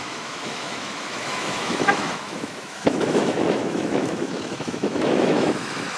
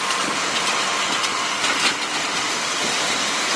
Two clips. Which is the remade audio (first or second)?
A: first